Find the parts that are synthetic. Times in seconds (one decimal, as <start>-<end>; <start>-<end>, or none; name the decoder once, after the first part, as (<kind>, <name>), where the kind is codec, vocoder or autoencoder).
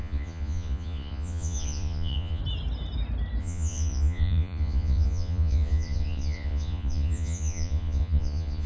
0.0-2.4 (vocoder, Vocos); 3.4-8.7